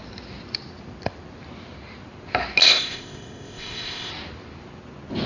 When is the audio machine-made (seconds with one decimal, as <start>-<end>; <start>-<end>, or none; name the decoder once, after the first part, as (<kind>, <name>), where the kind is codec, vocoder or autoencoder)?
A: 2.6-4.1 (codec, ZipCodec)